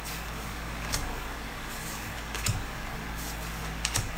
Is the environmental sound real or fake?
fake